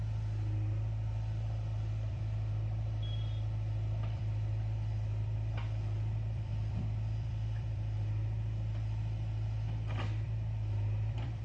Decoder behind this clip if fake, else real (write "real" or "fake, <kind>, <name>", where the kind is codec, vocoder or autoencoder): fake, vocoder, BigVGAN v2